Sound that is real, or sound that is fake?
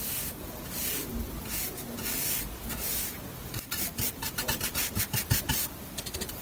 real